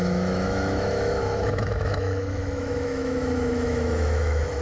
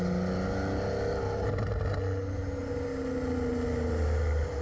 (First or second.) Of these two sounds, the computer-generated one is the first